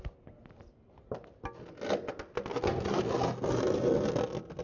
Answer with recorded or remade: recorded